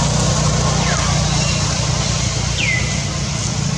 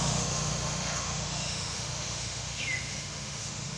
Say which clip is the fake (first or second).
second